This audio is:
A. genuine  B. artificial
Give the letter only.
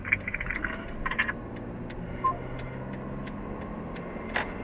A